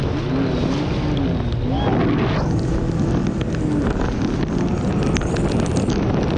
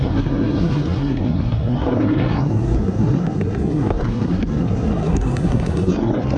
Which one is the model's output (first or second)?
second